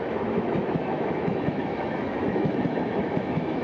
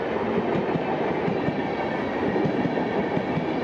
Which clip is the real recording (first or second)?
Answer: second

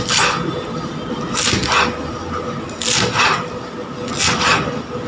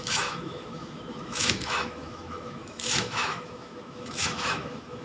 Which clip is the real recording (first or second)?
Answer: first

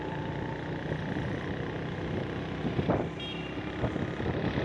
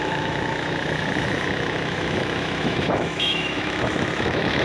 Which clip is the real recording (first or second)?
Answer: first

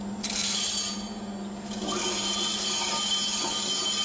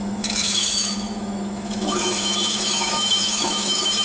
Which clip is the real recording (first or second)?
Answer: first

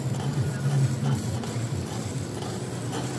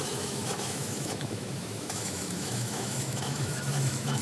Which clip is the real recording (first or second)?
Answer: first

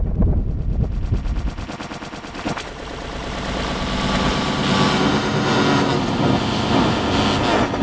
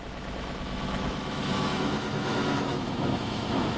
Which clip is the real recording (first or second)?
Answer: first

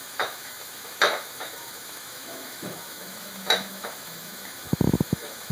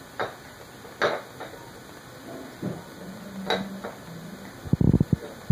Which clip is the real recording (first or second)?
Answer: second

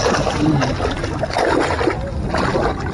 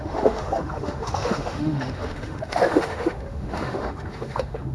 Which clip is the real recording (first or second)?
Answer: first